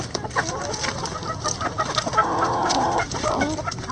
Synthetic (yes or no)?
no